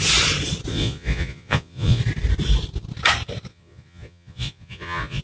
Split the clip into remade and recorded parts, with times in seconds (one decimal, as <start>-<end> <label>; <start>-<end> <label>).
0.0-0.7 recorded; 0.7-2.0 remade; 2.0-3.5 recorded; 3.5-5.2 remade